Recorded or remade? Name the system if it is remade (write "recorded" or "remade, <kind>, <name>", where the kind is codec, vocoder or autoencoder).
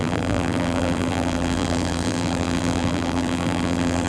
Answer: remade, vocoder, BigVGAN v2